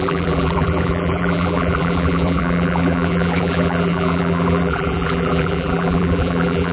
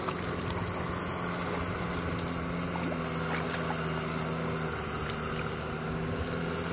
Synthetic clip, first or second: first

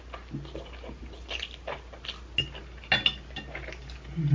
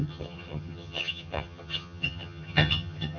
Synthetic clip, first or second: second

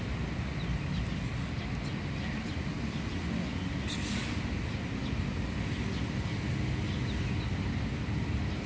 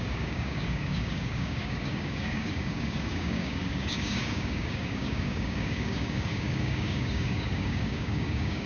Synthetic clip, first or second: second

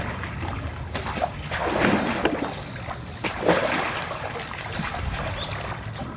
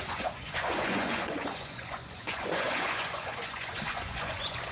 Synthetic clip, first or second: second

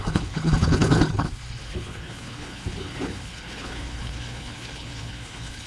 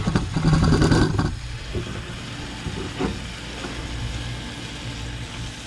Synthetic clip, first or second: first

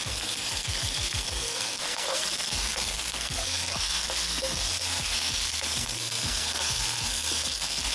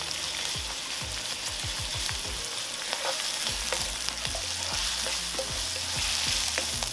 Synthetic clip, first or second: first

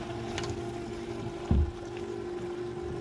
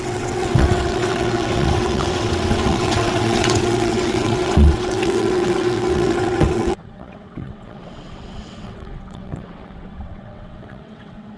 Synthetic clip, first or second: second